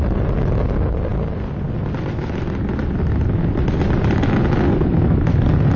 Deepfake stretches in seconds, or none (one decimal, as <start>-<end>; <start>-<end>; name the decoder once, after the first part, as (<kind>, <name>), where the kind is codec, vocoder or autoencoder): none